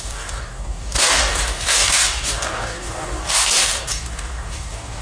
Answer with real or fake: fake